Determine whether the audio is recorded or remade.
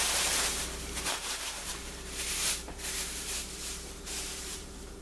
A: remade